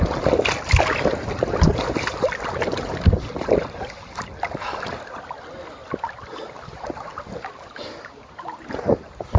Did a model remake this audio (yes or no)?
no